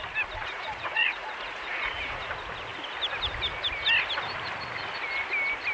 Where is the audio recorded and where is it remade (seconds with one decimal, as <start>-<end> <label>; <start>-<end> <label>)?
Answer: 0.0-0.4 recorded; 0.4-2.3 remade; 2.3-5.7 recorded